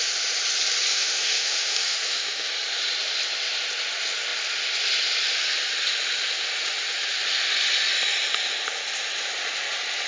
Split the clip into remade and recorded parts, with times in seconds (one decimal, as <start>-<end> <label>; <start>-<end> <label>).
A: 0.0-0.9 recorded; 0.9-2.5 remade; 2.5-10.1 recorded